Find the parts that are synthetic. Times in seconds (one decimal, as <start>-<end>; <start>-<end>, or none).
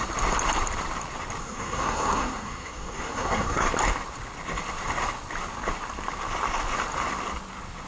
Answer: 1.4-3.7